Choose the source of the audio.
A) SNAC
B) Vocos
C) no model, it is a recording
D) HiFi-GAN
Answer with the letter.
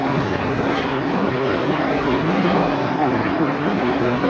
A